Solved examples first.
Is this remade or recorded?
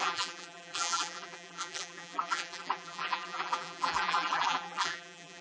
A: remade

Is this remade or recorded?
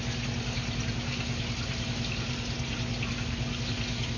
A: recorded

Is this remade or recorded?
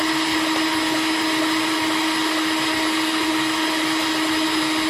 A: recorded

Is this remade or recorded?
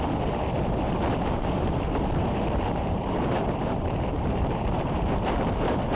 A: remade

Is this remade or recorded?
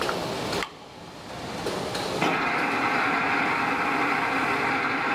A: remade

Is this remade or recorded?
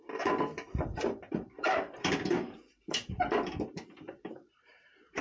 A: remade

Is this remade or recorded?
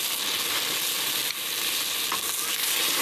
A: recorded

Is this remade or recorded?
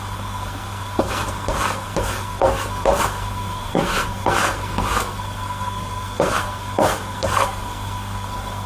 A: remade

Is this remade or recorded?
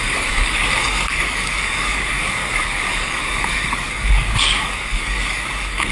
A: remade